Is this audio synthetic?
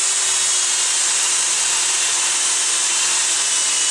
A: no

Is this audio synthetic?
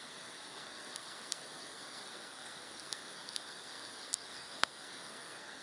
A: yes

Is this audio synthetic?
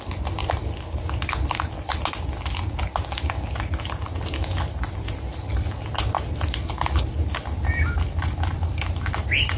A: no